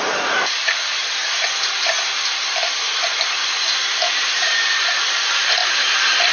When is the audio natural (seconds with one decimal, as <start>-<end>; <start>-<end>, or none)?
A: none